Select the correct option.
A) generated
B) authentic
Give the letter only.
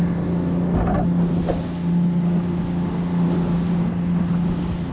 B